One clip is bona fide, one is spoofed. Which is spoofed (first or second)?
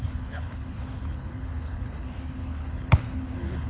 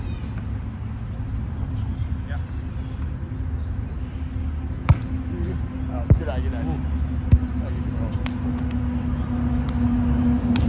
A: first